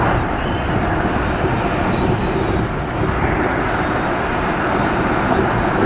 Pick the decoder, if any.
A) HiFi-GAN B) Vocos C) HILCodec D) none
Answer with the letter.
D